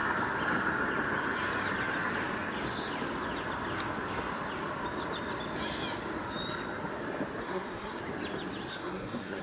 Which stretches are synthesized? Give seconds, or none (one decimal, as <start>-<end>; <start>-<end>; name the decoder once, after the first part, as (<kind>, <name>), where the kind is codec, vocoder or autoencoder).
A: 7.4-8.0 (codec, SNAC); 8.7-9.4